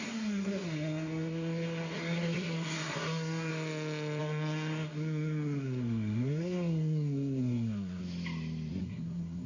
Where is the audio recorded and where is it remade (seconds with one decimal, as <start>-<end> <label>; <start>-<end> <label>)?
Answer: 0.0-3.5 remade; 3.5-4.2 recorded; 4.2-8.0 remade; 8.0-8.8 recorded; 8.8-9.5 remade